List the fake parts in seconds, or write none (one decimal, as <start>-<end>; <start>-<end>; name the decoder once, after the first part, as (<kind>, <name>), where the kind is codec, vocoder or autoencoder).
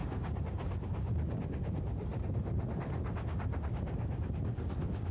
none